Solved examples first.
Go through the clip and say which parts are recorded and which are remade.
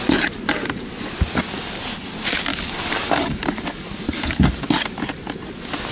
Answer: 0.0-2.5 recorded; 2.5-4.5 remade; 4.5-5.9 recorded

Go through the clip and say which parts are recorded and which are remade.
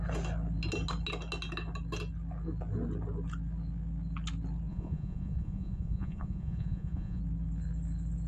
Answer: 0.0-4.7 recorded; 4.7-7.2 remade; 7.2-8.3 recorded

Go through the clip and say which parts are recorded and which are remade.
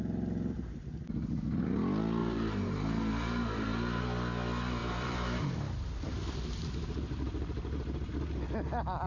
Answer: 0.0-2.2 recorded; 2.2-4.0 remade; 4.0-4.8 recorded; 4.8-8.1 remade; 8.1-9.1 recorded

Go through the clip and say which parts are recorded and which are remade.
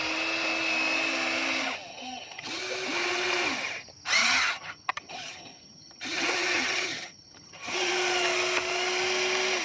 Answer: 0.0-1.9 recorded; 1.9-2.6 remade; 2.6-4.2 recorded; 4.2-7.9 remade; 7.9-9.6 recorded